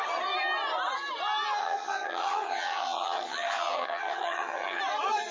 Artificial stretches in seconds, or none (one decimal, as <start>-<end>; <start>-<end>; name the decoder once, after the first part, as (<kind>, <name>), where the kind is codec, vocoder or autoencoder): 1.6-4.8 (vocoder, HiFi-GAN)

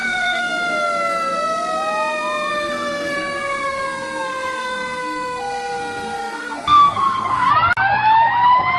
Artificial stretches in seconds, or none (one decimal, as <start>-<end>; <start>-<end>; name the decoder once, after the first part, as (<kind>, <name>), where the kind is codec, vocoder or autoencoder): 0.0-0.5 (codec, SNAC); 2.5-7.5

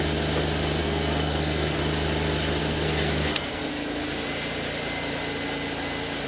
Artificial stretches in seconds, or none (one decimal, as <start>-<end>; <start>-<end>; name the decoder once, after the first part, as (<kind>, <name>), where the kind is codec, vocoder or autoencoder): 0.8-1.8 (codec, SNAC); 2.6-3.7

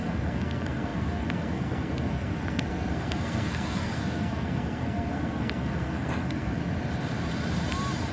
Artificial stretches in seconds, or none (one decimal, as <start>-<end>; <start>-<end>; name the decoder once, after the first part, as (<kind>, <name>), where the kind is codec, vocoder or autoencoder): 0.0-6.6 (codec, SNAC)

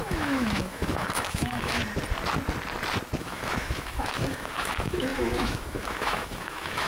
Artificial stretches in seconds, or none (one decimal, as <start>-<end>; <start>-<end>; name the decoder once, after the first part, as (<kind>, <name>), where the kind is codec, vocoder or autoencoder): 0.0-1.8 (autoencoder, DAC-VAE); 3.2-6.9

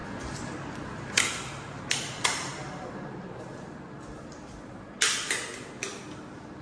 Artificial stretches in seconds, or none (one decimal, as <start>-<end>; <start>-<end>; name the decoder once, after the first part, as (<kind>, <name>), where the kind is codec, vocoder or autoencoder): none

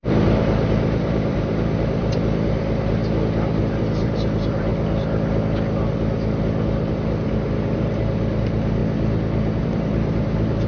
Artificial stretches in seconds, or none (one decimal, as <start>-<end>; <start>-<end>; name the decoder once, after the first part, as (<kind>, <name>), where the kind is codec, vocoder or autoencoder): 0.0-3.0 (vocoder, BigVGAN v2); 3.6-4.7; 6.9-8.8; 9.6-10.7

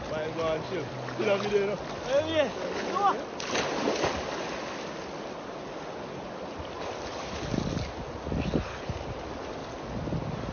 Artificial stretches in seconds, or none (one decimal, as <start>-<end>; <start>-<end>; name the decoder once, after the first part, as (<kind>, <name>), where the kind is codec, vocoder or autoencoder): none